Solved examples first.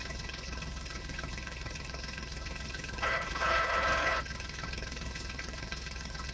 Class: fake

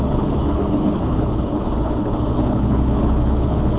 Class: fake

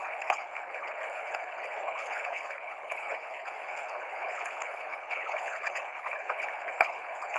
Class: fake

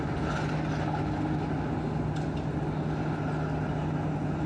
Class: real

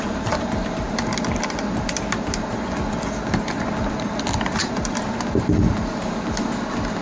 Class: real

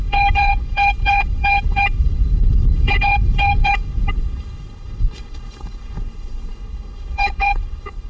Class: fake